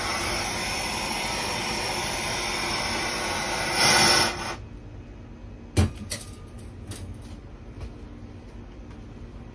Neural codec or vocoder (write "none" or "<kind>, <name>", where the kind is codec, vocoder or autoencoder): none